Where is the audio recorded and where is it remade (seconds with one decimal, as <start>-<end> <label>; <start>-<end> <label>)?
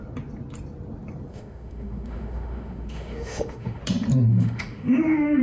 0.0-1.3 recorded; 1.3-3.8 remade; 3.8-4.3 recorded; 4.3-5.4 remade